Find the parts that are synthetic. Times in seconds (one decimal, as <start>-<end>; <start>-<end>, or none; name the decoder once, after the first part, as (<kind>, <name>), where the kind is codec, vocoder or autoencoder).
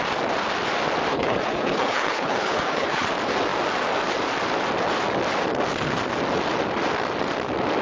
1.1-3.1 (codec, HILCodec)